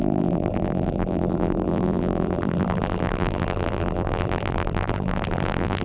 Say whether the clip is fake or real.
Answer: fake